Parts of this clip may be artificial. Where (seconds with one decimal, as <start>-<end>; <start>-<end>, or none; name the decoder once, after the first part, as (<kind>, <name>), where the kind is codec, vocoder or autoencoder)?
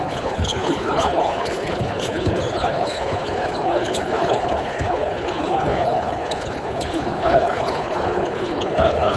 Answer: 0.0-9.2 (codec, HILCodec)